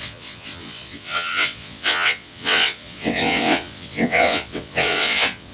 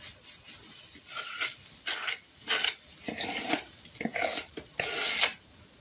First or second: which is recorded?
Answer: second